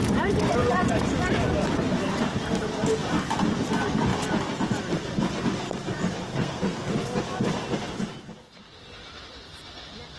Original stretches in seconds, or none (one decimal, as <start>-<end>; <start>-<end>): 0.0-6.3; 6.9-10.2